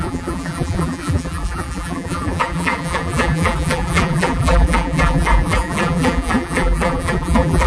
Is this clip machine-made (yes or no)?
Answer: yes